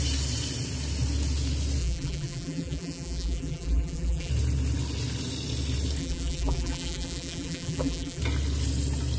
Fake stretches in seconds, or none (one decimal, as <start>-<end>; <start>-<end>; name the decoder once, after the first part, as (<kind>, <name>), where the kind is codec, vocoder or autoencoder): 1.8-4.3 (vocoder, BigVGAN v2); 6.0-8.2